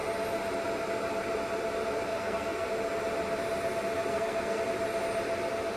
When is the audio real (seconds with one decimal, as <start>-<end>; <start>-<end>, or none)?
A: 0.0-2.1; 2.7-4.1; 4.6-5.8